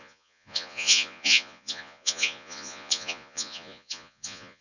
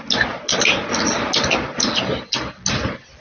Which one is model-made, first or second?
first